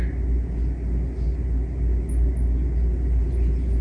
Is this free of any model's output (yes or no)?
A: yes